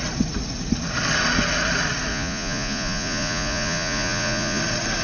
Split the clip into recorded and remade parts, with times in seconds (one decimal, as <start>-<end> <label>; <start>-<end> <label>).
0.0-2.1 recorded; 2.1-4.6 remade; 4.6-5.0 recorded